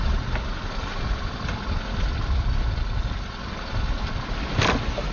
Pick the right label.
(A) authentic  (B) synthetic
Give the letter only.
A